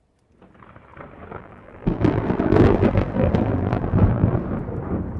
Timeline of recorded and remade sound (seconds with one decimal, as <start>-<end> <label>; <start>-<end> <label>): 0.0-1.3 recorded; 1.3-4.4 remade; 4.4-5.2 recorded